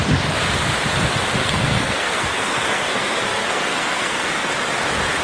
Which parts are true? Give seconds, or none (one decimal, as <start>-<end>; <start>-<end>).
0.0-1.4; 4.5-5.2

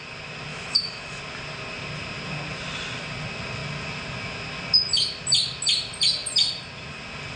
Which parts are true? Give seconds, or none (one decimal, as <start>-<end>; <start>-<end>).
0.0-0.5; 1.2-7.4

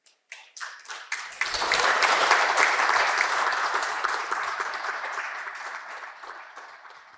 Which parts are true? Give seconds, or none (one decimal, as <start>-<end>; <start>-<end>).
0.4-1.4; 5.5-6.1

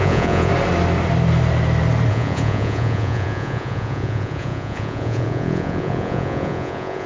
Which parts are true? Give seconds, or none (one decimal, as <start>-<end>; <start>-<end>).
0.5-2.1

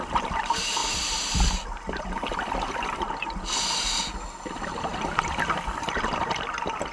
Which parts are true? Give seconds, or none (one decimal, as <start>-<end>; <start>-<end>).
0.0-4.9; 6.2-6.9

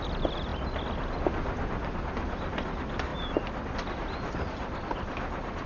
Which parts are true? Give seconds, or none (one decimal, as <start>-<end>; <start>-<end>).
0.0-3.1; 3.7-5.7

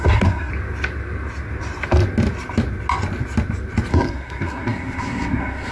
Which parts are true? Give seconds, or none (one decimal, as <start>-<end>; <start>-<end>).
0.5-3.9

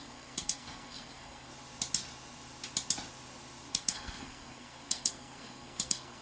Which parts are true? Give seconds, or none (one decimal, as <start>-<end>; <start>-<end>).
1.5-3.7